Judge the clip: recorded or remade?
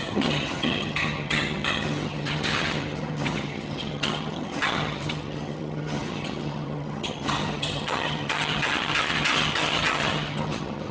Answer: remade